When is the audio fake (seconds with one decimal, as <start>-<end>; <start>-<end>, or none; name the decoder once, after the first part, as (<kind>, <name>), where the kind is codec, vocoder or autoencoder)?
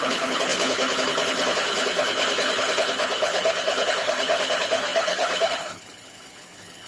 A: 0.0-6.9 (codec, HILCodec)